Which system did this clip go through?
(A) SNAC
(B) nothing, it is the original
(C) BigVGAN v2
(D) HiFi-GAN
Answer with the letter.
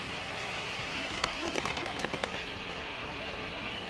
A